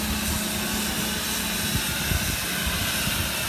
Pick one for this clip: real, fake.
real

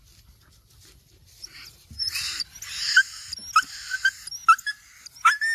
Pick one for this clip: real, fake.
real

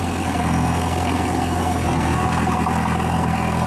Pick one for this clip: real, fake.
fake